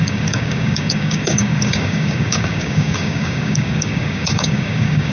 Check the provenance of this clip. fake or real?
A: fake